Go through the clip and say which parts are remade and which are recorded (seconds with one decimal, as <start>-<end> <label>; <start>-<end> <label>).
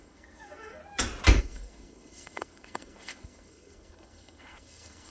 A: 0.0-0.8 remade; 0.8-1.4 recorded; 1.4-5.1 remade